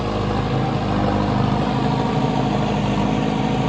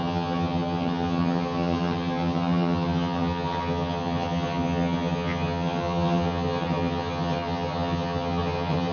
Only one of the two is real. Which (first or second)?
first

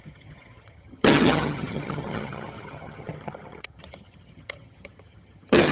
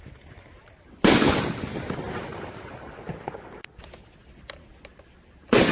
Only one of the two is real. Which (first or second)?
second